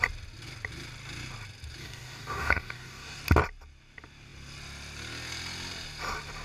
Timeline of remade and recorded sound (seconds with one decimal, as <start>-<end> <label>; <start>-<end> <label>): 0.0-1.8 recorded; 1.8-3.2 remade; 3.2-6.4 recorded